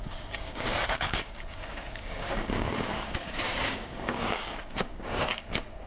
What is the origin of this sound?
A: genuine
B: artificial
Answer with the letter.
B